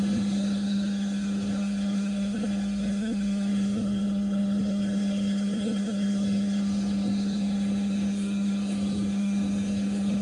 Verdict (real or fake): fake